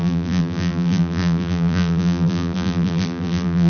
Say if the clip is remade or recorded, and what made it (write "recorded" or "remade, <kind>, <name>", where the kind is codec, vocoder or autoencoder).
remade, vocoder, BigVGAN v2